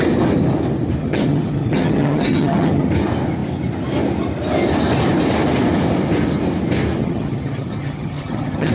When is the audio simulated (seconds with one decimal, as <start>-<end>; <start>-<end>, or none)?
1.0-2.9; 7.0-8.7